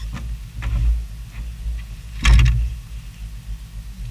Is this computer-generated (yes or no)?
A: no